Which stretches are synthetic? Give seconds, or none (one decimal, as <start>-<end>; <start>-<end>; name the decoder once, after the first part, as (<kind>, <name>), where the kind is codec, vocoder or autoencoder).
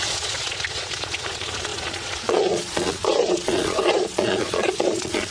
0.0-5.3 (vocoder, Vocos)